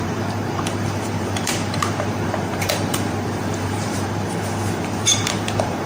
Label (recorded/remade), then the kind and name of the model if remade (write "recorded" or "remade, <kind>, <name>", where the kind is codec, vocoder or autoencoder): remade, vocoder, BigVGAN v2